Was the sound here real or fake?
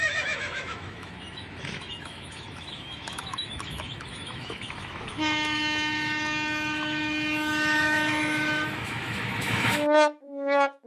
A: fake